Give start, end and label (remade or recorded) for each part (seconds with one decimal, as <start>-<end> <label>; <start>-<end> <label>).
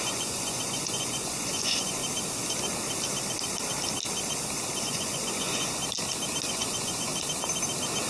0.0-2.0 remade; 2.0-4.8 recorded; 4.8-5.8 remade; 5.8-6.5 recorded; 6.5-7.1 remade; 7.1-8.1 recorded